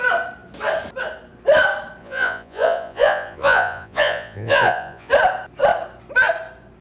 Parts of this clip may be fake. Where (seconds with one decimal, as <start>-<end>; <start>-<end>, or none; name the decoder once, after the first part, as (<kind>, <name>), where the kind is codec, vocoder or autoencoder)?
2.0-5.1 (vocoder, Vocos)